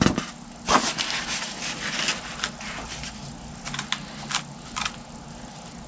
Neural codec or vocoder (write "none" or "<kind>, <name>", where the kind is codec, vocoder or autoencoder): none